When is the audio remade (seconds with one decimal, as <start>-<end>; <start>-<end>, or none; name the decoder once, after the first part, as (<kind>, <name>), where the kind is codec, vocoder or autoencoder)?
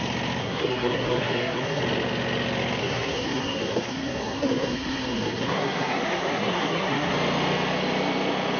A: 0.4-1.8 (codec, SNAC); 2.8-7.1